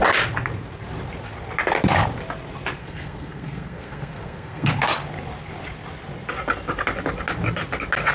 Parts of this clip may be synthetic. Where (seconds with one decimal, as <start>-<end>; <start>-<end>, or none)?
2.8-4.7